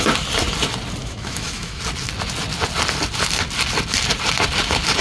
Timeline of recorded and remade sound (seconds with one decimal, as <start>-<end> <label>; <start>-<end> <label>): 0.0-1.0 recorded; 1.0-1.8 remade; 1.8-5.0 recorded